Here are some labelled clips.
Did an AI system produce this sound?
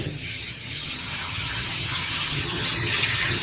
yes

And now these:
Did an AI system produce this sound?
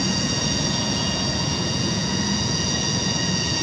yes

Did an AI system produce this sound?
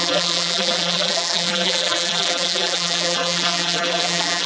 yes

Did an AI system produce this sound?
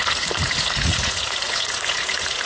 yes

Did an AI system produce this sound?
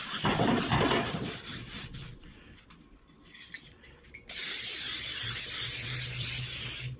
no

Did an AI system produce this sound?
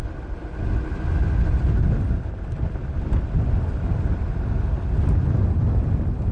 no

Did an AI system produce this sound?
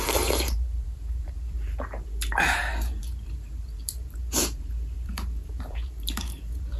yes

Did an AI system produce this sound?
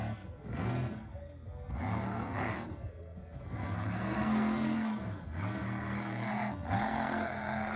yes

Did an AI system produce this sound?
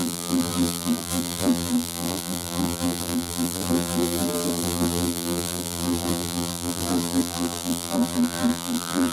yes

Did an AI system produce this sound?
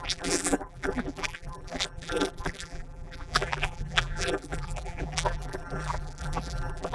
yes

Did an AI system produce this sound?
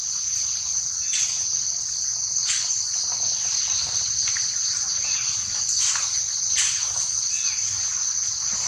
no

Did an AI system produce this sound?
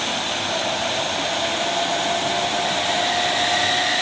no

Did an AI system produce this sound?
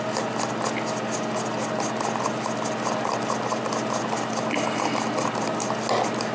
no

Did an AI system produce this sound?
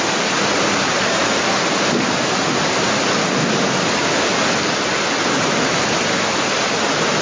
no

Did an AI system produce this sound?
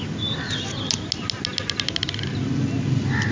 no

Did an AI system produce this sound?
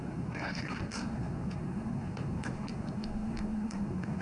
yes